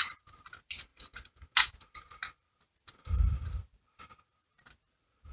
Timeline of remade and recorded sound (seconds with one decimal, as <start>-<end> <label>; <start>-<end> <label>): 0.0-5.3 recorded

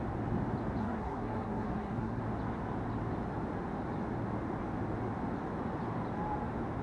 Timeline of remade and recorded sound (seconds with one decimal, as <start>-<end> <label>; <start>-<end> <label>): 0.0-0.8 recorded; 0.8-2.2 remade; 2.2-6.8 recorded

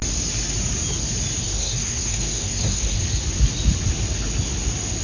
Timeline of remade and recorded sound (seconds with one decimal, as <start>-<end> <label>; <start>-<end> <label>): 0.0-1.4 recorded; 1.4-3.0 remade; 3.0-5.0 recorded

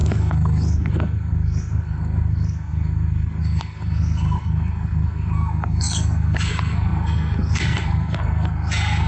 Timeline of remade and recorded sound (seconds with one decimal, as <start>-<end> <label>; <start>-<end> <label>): 0.0-9.1 remade

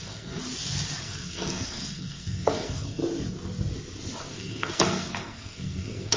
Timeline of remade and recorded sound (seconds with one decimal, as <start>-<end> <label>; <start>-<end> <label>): 0.0-0.4 remade; 0.4-1.0 recorded; 1.0-3.0 remade; 3.0-4.2 recorded; 4.2-6.2 remade

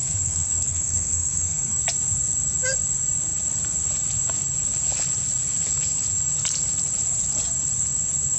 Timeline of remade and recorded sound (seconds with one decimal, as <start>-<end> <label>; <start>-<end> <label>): 0.0-1.8 remade; 1.8-8.4 recorded

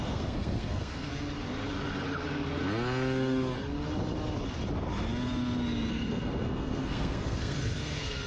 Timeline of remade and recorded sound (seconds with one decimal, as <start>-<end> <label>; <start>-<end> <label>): 0.0-1.1 remade; 1.1-5.9 recorded; 5.9-8.3 remade